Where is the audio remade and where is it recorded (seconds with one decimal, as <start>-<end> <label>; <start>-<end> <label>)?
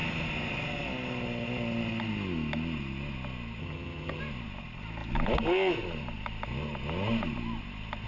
0.0-3.6 recorded; 3.6-4.2 remade; 4.2-8.1 recorded